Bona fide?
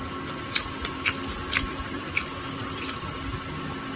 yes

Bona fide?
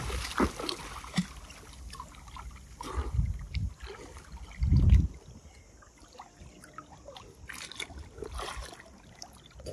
yes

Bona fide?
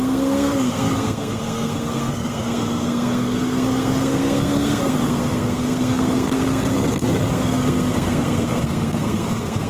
no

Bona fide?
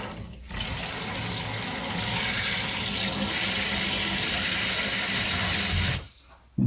yes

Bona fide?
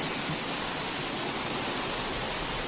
yes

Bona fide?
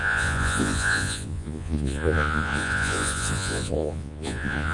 no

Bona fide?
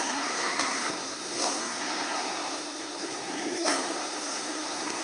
no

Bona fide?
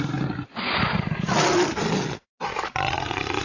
yes